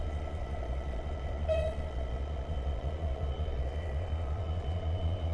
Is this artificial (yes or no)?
yes